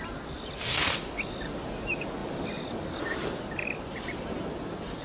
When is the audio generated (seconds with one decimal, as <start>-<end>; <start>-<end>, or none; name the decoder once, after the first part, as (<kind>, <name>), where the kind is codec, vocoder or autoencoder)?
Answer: 2.2-3.0 (vocoder, BigVGAN v2)